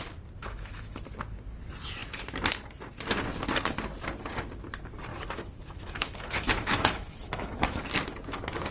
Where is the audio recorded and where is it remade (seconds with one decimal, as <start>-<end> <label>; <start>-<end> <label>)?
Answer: 0.0-0.4 recorded; 0.4-1.0 remade; 1.0-5.1 recorded; 5.1-7.8 remade; 7.8-8.7 recorded